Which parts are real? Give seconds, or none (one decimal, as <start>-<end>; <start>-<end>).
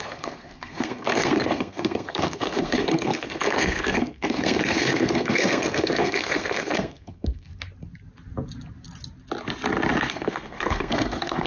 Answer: 7.5-10.1